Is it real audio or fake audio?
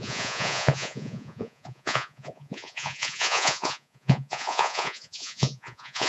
fake